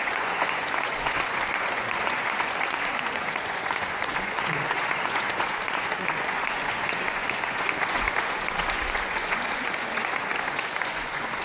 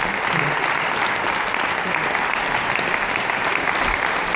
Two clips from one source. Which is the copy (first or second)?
first